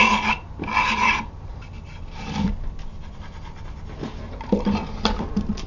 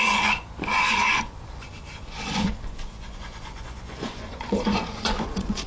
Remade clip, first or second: second